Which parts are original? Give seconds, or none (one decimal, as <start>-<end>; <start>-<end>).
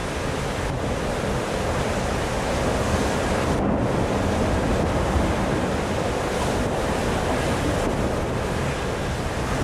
1.6-3.0; 7.1-9.6